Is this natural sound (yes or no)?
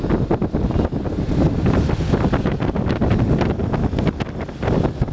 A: yes